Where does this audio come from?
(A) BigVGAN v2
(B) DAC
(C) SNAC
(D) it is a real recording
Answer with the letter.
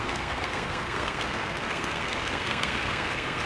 C